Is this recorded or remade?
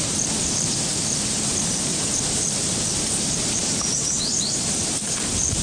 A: remade